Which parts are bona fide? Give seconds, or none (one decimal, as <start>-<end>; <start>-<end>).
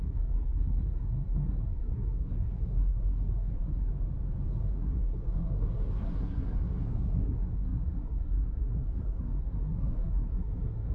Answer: 3.9-4.5